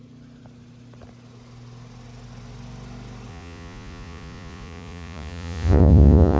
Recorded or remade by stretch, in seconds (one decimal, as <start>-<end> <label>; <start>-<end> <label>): 0.0-3.3 recorded; 3.3-6.4 remade